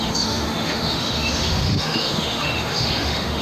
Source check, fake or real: fake